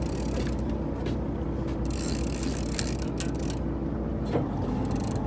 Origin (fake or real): real